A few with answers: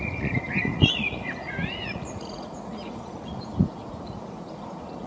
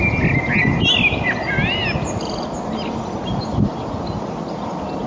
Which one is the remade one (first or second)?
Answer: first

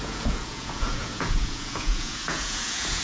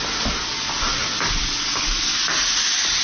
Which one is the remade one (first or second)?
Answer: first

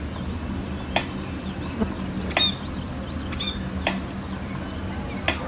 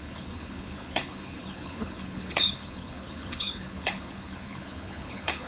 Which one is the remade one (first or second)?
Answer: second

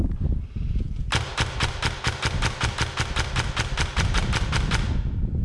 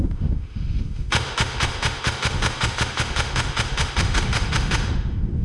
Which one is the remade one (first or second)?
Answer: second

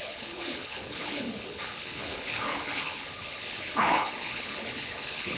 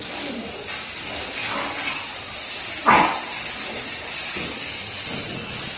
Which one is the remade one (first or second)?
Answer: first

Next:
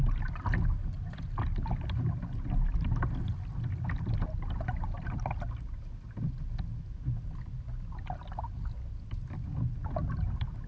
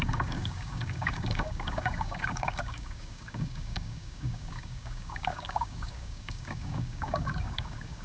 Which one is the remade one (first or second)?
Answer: second